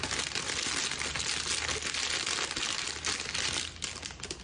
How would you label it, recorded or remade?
recorded